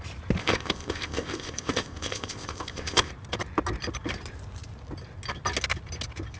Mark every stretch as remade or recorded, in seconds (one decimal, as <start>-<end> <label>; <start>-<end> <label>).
0.0-0.4 recorded; 0.4-3.1 remade; 3.1-6.4 recorded